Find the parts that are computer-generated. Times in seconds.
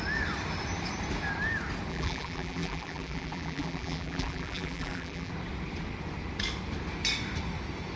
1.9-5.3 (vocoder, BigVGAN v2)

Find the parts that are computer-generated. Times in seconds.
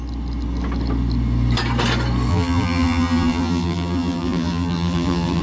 2.3-5.4 (vocoder, BigVGAN v2)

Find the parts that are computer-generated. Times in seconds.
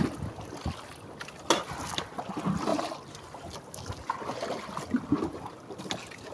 none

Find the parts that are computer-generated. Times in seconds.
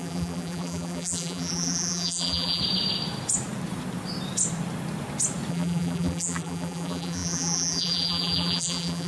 0.0-2.6 (vocoder, BigVGAN v2); 5.5-9.1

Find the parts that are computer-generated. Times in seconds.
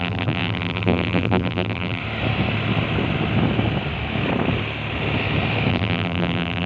0.0-2.0 (vocoder, BigVGAN v2); 5.7-6.7